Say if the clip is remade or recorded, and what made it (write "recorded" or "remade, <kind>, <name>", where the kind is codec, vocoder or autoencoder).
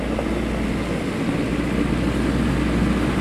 recorded